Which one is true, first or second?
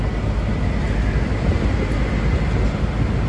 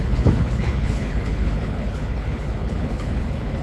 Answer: first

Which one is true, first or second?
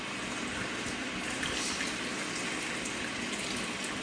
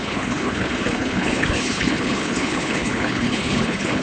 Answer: first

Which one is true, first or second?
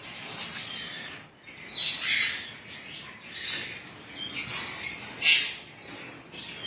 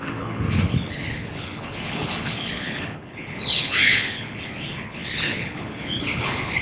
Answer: first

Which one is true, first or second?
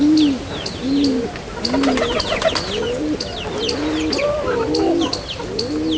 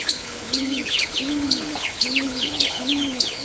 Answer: first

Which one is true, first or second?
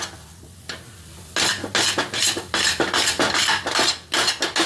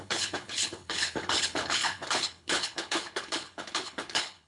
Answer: first